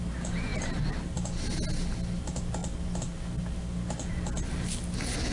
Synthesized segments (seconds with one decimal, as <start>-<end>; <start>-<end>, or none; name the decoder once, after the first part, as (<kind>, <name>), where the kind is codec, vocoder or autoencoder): none